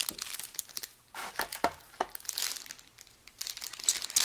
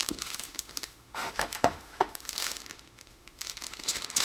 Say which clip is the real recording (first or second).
first